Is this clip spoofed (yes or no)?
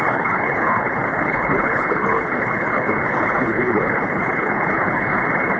yes